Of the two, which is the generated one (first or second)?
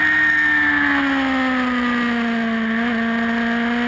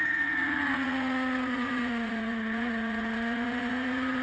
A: second